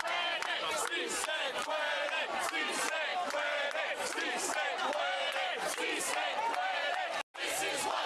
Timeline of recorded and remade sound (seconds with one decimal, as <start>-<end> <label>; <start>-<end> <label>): 0.0-1.3 recorded; 1.3-2.4 remade; 2.4-3.1 recorded; 3.1-6.0 remade; 6.0-8.1 recorded